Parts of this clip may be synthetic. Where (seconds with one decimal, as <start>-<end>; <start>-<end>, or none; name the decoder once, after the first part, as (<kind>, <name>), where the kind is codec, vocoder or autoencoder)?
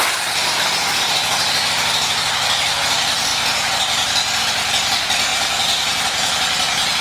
5.3-7.0 (vocoder, BigVGAN v2)